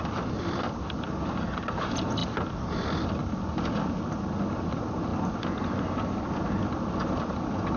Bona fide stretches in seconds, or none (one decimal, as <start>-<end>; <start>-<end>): 0.0-7.8